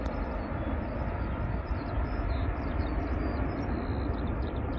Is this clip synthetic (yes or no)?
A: no